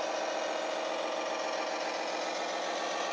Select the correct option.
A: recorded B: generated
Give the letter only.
A